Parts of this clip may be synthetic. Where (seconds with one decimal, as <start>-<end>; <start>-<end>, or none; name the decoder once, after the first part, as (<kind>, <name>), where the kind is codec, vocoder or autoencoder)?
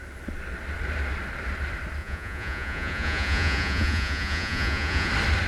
2.0-5.1 (vocoder, Vocos)